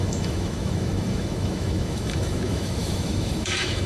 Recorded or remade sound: remade